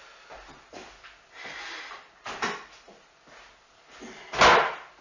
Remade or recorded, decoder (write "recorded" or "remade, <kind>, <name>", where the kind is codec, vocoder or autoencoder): recorded